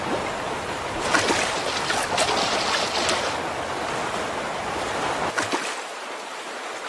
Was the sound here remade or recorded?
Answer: recorded